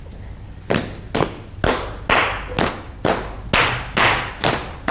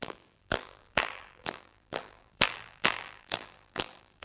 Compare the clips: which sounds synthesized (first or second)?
second